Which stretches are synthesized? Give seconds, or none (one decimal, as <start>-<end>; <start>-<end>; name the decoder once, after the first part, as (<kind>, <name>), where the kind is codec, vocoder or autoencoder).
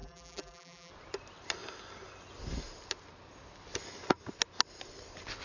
0.0-0.9 (vocoder, BigVGAN v2)